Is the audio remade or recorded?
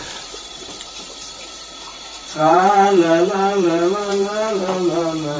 remade